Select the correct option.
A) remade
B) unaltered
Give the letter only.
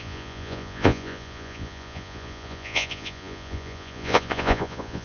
A